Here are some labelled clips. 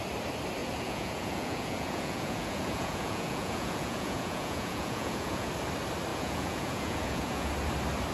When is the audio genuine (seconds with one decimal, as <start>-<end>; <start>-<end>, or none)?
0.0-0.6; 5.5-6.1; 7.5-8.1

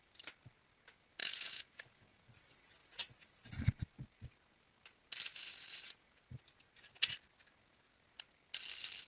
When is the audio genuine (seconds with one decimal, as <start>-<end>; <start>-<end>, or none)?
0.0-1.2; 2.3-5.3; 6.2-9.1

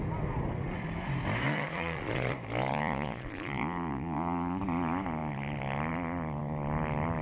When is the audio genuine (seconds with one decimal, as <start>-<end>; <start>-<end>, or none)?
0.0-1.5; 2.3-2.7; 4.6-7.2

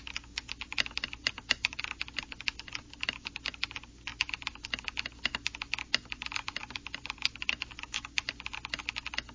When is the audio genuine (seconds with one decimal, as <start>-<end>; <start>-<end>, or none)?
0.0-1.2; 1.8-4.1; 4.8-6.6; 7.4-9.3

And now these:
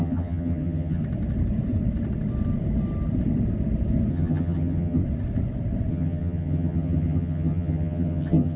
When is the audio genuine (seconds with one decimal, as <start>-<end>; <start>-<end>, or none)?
1.0-4.1; 5.0-5.9

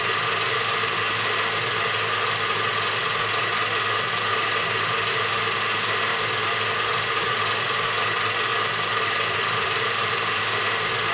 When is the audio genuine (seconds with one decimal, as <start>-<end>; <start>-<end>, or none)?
0.0-6.1; 7.3-8.5; 10.4-11.1